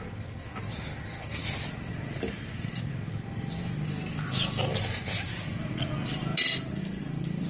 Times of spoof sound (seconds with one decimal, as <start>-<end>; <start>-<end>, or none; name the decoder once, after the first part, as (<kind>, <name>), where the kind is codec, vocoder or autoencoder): none